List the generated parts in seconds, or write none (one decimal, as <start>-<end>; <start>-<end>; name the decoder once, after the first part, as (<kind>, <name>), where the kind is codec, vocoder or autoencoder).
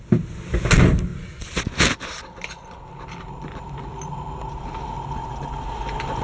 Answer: none